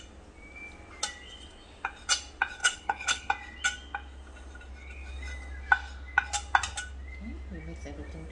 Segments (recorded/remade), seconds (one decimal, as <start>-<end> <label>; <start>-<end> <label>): 0.0-2.6 recorded; 2.6-3.3 remade; 3.3-8.3 recorded